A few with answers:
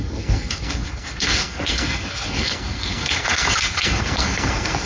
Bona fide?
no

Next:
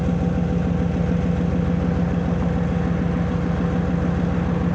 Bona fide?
yes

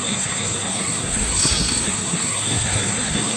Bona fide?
no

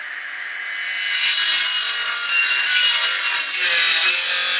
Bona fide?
yes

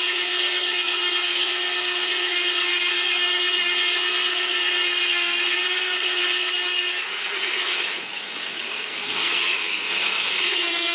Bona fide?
no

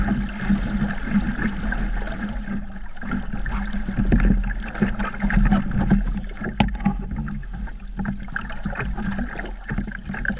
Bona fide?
yes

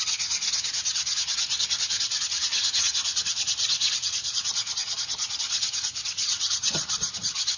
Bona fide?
no